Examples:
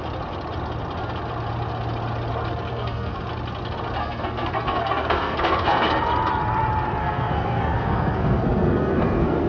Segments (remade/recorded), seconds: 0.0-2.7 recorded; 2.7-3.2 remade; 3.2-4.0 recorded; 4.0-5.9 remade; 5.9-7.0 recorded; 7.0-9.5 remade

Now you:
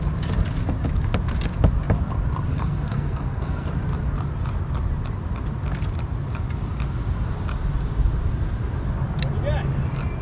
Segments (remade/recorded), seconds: 0.0-2.5 recorded; 2.5-3.7 remade; 3.7-10.2 recorded

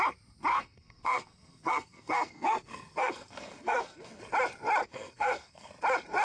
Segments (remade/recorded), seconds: 0.0-0.5 recorded; 0.5-4.2 remade; 4.2-4.8 recorded; 4.8-5.7 remade; 5.7-6.2 recorded